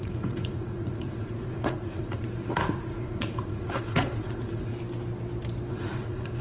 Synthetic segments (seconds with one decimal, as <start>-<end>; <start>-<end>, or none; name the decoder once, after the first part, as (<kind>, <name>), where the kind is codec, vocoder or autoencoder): 0.0-4.7 (vocoder, Vocos); 5.7-6.4